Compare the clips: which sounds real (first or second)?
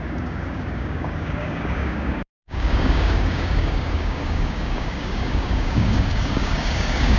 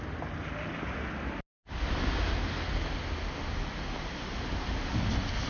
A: second